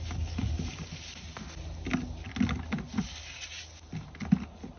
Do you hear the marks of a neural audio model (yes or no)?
no